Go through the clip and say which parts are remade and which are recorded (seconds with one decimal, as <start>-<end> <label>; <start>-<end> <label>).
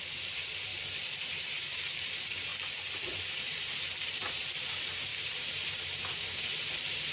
0.0-2.5 remade; 2.5-3.3 recorded; 3.3-7.1 remade